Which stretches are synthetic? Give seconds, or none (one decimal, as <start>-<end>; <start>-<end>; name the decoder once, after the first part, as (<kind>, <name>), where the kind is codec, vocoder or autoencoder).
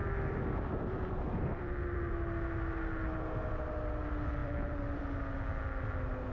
0.0-2.1 (vocoder, BigVGAN v2); 4.4-5.0